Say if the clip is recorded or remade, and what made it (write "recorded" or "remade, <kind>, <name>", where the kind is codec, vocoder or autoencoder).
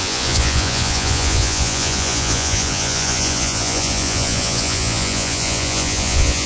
remade, vocoder, Vocos